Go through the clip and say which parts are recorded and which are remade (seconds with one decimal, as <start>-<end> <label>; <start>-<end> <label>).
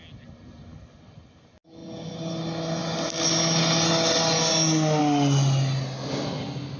0.0-6.8 recorded